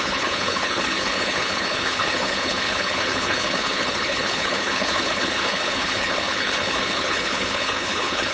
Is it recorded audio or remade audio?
remade